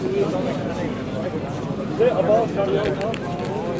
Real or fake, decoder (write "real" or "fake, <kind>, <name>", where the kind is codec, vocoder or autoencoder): real